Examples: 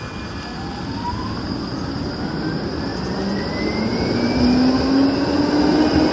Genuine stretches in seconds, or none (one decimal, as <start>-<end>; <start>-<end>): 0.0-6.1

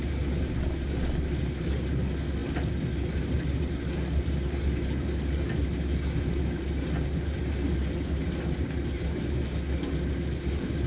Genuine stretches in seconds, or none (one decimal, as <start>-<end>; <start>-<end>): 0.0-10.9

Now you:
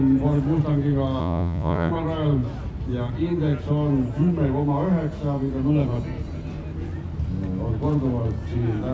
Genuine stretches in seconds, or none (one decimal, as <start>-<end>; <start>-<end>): 0.0-1.2; 1.9-8.9

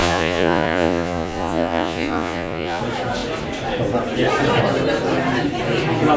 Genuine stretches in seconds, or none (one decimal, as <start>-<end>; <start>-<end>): 2.8-6.2